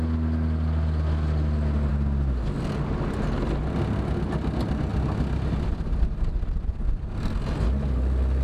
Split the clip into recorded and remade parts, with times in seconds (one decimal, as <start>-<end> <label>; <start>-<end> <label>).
0.0-8.4 recorded